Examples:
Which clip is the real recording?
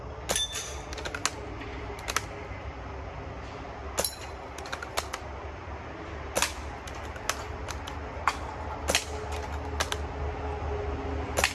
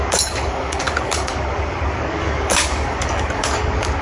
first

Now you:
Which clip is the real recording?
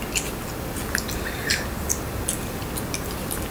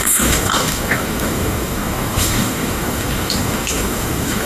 first